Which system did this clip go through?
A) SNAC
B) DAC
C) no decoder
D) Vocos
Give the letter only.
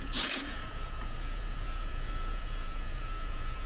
D